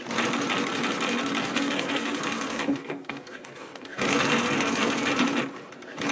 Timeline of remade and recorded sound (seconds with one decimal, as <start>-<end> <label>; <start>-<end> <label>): 0.0-1.4 recorded; 1.4-5.1 remade; 5.1-6.1 recorded